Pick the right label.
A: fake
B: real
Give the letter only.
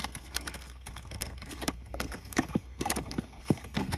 A